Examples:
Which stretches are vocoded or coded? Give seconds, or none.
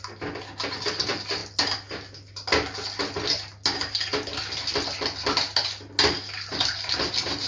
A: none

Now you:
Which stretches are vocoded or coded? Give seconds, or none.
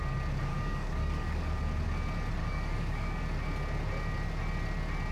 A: 0.5-1.6; 2.4-3.2